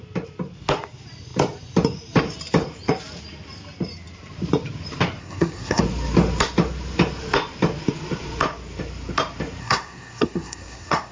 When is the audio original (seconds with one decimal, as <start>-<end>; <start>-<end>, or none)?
0.0-5.2; 5.8-9.6